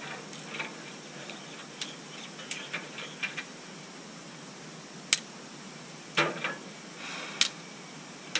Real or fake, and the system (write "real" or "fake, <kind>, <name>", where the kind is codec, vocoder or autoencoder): real